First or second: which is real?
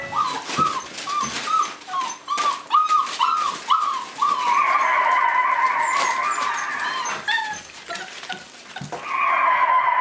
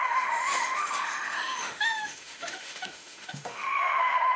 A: first